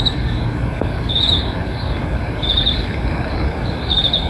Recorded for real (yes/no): no